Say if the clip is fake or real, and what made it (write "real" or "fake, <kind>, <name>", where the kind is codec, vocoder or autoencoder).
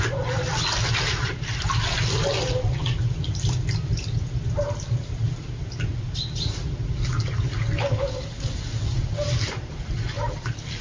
real